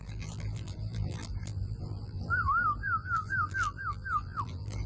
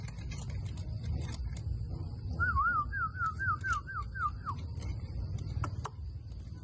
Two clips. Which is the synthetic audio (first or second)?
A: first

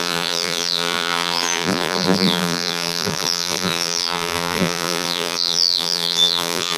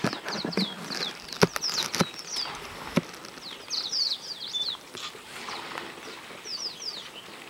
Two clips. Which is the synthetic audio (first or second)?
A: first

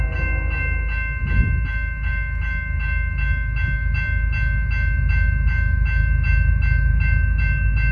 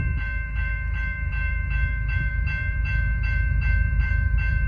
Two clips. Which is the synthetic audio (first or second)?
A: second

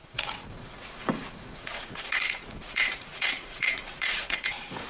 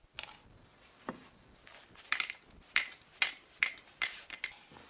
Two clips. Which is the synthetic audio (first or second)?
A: first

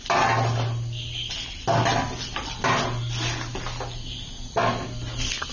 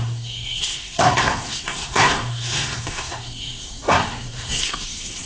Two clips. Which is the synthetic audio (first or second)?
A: second